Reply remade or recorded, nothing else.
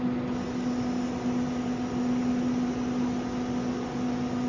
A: recorded